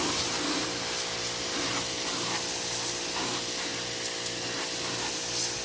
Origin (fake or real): real